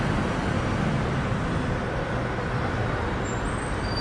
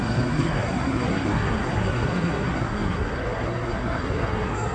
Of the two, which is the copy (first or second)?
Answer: second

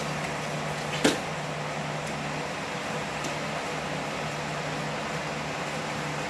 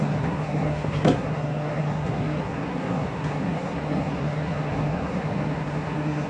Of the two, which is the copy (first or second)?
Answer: second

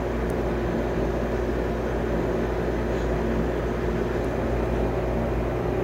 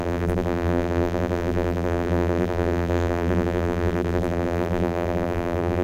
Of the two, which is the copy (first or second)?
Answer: second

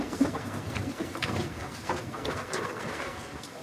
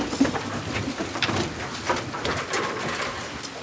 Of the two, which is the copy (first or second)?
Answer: first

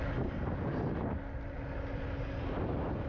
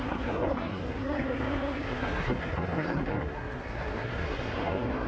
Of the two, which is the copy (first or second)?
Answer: second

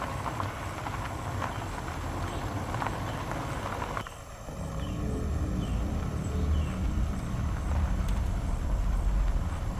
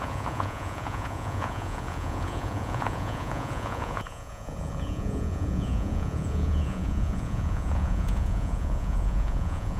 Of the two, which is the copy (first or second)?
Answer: second